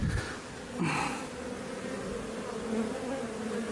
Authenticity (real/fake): real